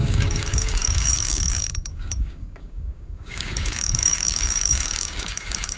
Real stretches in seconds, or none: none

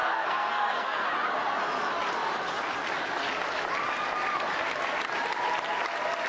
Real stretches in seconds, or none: 1.1-6.3